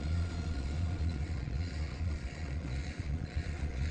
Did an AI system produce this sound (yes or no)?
yes